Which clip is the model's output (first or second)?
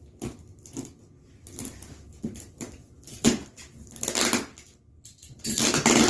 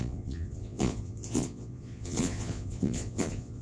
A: second